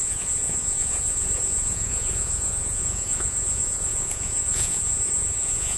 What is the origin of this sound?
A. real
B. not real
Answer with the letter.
B